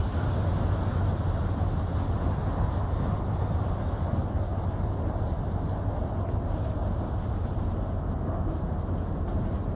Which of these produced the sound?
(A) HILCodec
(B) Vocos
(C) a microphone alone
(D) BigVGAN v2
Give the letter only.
C